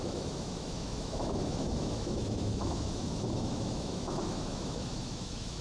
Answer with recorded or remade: remade